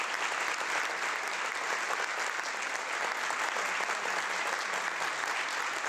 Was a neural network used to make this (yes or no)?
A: no